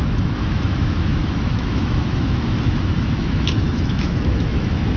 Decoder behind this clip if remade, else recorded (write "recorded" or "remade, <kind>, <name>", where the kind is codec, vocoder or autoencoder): remade, autoencoder, DAC-VAE